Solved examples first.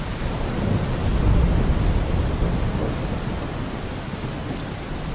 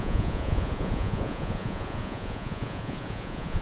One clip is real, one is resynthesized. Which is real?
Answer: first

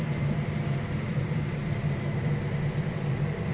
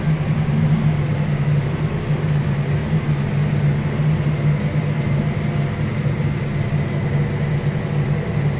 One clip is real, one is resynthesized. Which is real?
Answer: second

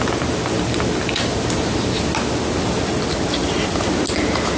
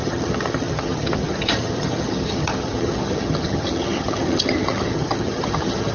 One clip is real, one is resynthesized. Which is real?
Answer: first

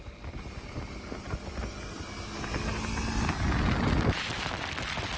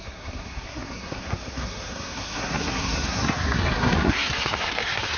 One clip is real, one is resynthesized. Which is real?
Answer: first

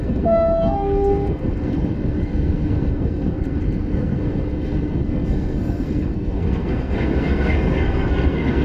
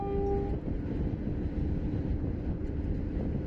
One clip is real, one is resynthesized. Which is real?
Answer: second